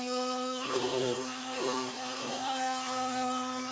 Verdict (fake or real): fake